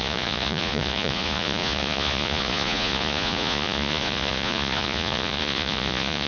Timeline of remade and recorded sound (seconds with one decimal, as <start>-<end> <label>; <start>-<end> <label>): 0.0-6.3 remade